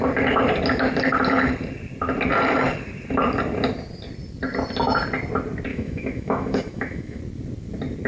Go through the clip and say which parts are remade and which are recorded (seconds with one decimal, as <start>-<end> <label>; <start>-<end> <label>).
0.0-5.7 recorded; 5.7-7.2 remade; 7.2-8.1 recorded